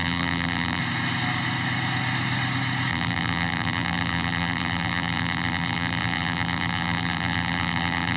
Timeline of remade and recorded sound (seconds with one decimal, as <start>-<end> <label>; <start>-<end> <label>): 0.0-0.8 remade; 0.8-2.9 recorded; 2.9-8.2 remade